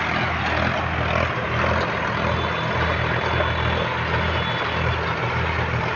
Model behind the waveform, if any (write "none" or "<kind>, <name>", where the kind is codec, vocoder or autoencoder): none